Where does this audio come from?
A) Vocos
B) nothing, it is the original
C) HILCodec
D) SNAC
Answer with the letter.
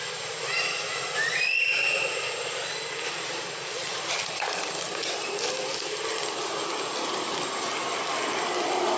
B